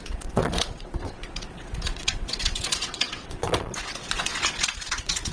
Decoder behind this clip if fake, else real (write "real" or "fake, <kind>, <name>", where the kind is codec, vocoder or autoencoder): fake, vocoder, WaveNeXt